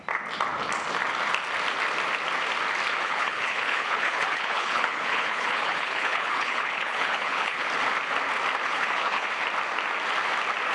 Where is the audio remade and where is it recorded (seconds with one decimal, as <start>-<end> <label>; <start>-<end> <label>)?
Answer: 0.0-3.0 recorded; 3.0-7.7 remade; 7.7-8.6 recorded; 8.6-9.3 remade; 9.3-10.7 recorded